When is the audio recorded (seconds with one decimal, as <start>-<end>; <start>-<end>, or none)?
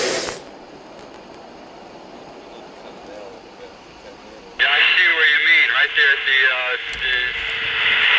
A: 0.0-8.2